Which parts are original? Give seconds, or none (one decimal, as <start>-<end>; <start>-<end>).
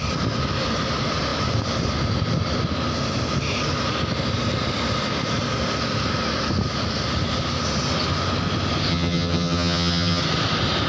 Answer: 0.0-8.9; 10.2-10.9